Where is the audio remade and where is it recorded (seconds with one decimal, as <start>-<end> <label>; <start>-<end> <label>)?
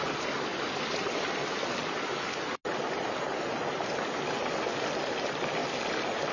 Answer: 0.0-6.3 recorded